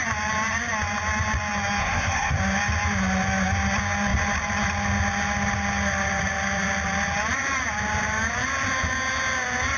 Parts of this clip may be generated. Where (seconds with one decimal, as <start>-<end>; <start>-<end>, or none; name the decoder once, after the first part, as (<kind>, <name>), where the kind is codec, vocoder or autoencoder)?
1.8-2.4 (codec, SNAC)